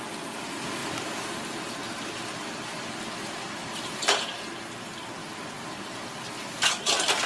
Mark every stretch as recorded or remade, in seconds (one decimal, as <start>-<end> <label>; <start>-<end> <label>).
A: 0.0-0.8 recorded; 0.8-4.4 remade; 4.4-7.3 recorded